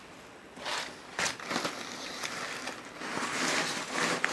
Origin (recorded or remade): recorded